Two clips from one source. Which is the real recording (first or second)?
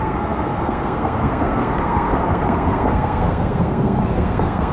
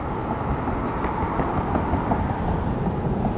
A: second